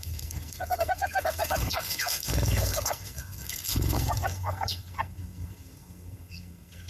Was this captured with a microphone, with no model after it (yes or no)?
no